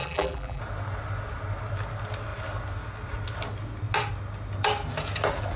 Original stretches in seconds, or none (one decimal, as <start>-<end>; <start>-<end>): 0.6-5.6